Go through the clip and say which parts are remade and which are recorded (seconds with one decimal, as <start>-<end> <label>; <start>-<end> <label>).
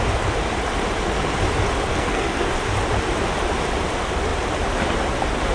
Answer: 0.0-1.9 recorded; 1.9-2.5 remade; 2.5-5.5 recorded